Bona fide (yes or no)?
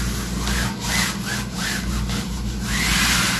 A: yes